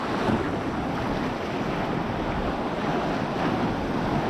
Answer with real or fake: real